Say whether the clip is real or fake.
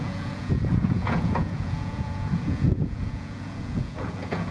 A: fake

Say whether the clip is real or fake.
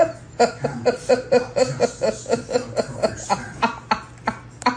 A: real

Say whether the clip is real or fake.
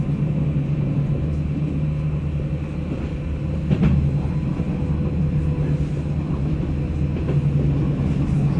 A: real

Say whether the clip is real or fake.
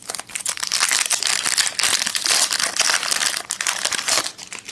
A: real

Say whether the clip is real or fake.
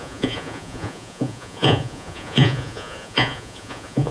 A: fake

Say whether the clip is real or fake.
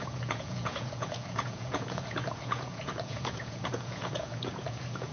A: fake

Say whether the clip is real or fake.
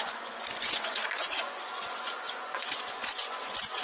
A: fake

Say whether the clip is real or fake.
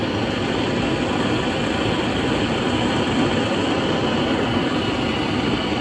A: real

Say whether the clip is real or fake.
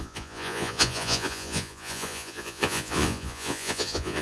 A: fake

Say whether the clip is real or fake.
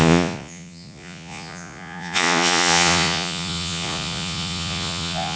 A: fake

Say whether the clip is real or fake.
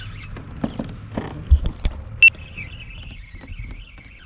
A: real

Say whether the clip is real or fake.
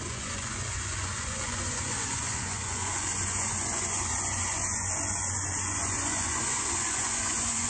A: fake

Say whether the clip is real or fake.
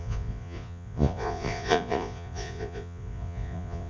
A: fake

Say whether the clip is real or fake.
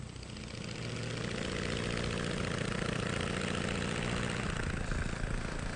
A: real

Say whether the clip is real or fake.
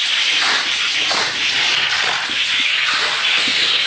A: real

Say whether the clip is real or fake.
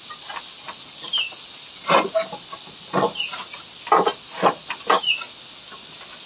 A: real